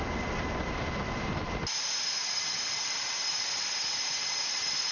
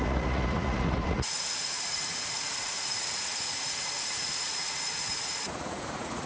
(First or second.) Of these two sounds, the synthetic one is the second